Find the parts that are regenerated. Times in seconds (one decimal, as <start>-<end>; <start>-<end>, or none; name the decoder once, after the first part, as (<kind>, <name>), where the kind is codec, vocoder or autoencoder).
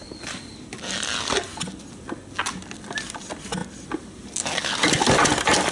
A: none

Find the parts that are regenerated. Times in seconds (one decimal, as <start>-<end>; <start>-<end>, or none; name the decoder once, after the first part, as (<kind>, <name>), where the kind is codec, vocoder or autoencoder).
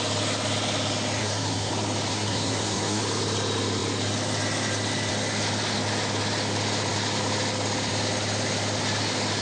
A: 1.2-1.7 (codec, SNAC); 2.1-3.0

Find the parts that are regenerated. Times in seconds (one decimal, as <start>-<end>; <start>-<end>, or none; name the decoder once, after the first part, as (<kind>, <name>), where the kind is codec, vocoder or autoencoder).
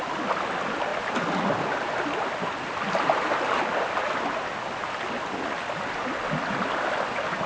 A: none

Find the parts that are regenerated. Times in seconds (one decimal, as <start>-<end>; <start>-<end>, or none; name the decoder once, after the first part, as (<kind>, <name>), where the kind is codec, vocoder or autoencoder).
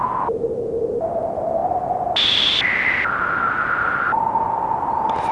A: none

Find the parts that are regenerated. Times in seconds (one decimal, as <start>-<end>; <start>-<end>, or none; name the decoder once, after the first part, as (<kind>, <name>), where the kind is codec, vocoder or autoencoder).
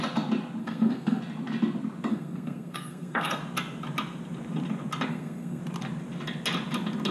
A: 0.6-1.2 (codec, SNAC); 2.1-3.4; 5.1-5.6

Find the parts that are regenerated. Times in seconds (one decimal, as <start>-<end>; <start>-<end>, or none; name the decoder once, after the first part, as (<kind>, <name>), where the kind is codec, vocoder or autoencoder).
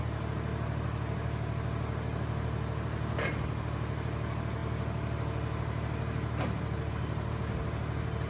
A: none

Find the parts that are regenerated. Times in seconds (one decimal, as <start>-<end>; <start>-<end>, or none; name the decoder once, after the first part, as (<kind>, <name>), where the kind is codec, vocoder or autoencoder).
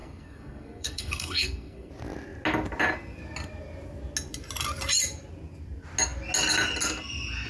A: 0.0-1.9 (codec, SNAC)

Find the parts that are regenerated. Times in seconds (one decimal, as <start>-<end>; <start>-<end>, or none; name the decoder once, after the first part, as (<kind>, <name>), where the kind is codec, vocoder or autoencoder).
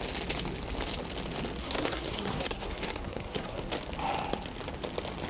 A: 1.6-3.7 (codec, SNAC)